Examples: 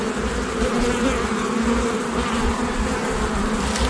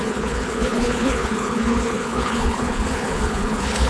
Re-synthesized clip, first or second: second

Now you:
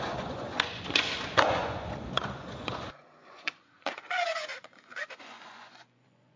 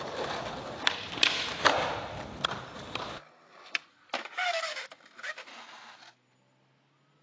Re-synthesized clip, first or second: first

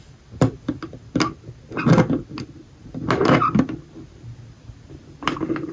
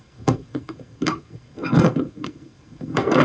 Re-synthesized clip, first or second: second